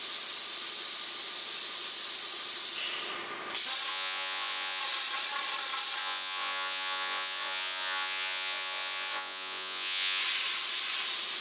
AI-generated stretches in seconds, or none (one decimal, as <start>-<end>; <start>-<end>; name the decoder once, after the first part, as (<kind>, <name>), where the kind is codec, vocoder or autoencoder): 3.9-4.8 (vocoder, Vocos); 6.0-10.2